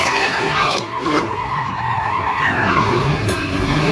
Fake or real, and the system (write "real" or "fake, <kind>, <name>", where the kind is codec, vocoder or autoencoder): fake, codec, SNAC